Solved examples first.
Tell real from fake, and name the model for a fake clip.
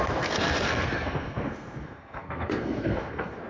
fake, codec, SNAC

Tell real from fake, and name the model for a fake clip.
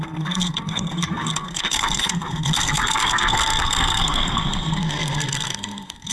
fake, codec, SNAC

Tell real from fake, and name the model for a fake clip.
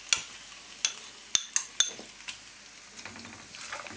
real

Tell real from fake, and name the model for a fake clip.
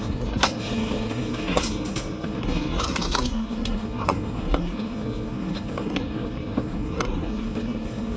fake, codec, SNAC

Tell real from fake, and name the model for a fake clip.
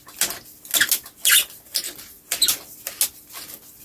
real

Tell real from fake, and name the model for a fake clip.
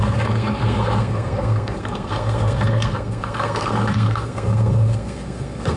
fake, codec, SNAC